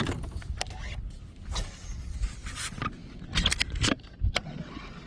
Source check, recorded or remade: recorded